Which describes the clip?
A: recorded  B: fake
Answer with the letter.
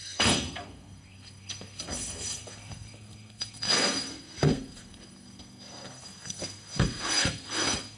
B